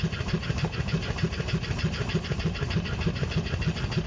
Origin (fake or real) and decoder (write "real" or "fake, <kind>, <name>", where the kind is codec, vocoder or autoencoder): real